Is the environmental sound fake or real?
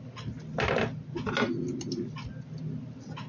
real